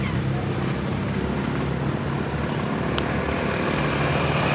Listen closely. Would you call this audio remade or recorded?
recorded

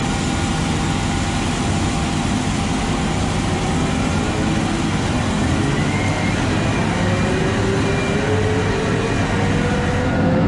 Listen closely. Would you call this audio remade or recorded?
recorded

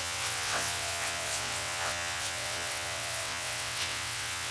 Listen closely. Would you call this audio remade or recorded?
remade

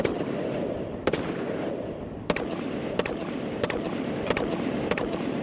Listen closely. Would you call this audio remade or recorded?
recorded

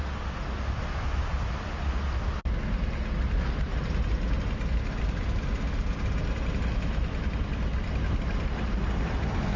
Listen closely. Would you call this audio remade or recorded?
recorded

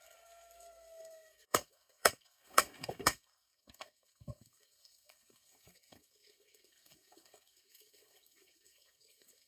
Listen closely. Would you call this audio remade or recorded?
remade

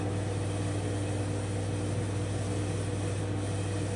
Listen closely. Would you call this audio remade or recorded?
recorded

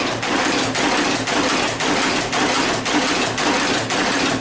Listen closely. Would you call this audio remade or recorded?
recorded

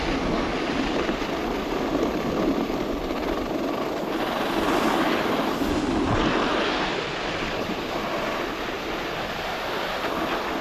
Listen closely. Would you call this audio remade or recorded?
recorded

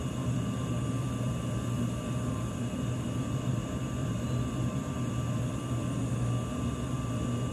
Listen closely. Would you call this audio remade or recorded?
remade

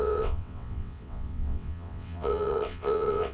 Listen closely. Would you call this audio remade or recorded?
remade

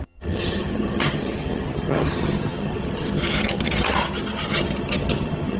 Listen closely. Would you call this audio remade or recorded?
remade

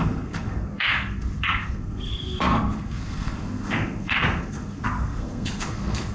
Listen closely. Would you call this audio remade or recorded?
remade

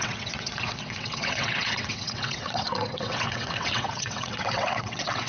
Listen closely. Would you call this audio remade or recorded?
remade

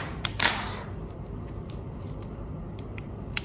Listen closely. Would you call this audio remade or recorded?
remade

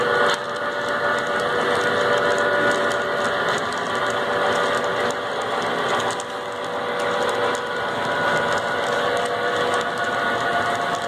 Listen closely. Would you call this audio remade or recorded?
recorded